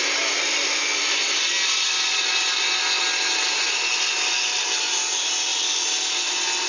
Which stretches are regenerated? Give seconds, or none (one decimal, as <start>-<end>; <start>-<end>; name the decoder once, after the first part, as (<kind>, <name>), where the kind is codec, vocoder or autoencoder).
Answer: none